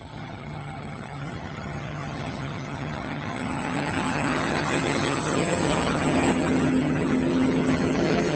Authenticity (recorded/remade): remade